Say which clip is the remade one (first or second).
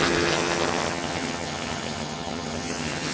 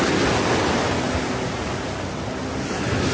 first